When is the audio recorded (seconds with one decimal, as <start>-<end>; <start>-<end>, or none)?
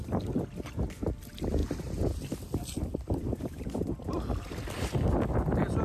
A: 0.0-1.6; 5.1-5.8